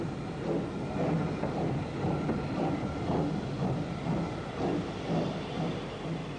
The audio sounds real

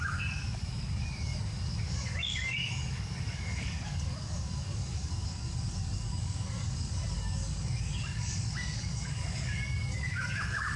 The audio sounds fake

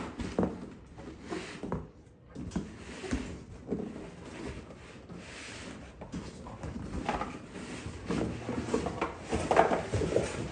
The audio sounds real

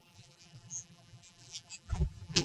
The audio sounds fake